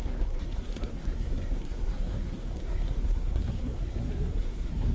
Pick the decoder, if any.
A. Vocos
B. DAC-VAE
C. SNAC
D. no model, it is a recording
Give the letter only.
C